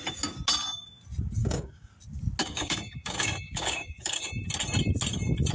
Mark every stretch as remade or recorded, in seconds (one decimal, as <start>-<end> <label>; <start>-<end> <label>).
0.0-1.4 recorded; 1.4-1.9 remade; 1.9-2.4 recorded; 2.4-4.3 remade; 4.3-5.5 recorded